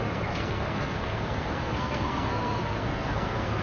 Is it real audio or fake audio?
fake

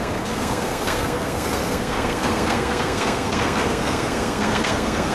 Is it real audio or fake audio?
fake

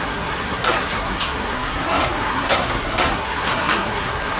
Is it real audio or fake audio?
fake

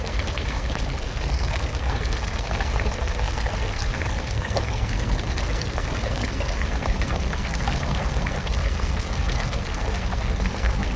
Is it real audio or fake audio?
fake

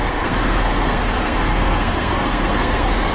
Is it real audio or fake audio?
fake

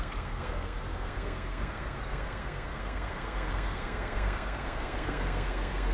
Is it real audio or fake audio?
fake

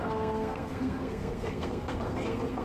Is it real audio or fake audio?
fake